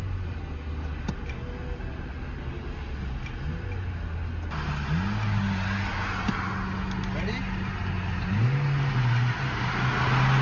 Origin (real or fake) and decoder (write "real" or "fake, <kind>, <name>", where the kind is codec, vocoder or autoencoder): real